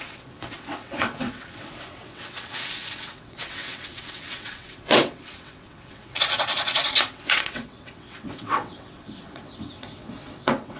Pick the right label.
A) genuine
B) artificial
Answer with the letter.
B